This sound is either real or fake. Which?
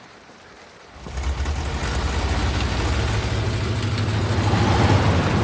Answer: real